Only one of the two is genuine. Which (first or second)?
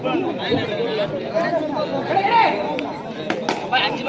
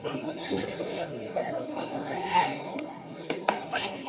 first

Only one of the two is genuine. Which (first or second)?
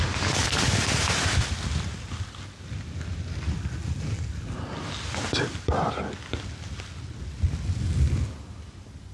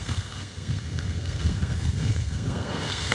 first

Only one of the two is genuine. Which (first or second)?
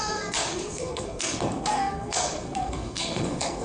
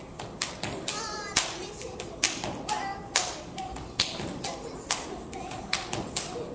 second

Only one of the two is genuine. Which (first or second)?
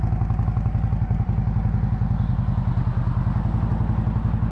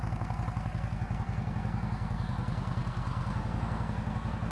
first